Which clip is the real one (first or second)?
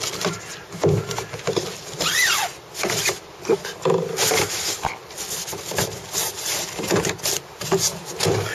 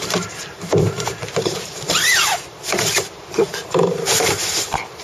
first